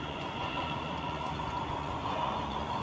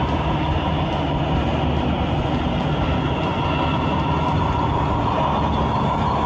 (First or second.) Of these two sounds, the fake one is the first